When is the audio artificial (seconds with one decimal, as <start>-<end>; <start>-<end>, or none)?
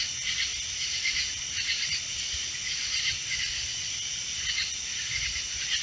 0.5-3.0; 3.8-4.5